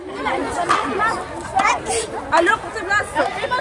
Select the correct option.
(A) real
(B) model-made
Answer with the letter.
A